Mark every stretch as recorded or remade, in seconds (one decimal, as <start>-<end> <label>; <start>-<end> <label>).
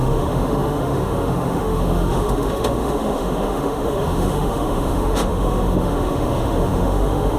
0.0-7.4 remade